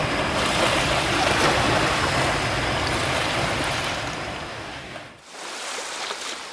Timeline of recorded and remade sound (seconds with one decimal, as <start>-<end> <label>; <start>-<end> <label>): 0.0-4.5 recorded; 4.5-5.1 remade; 5.1-6.5 recorded